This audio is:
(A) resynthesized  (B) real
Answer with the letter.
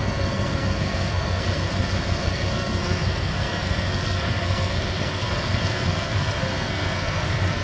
A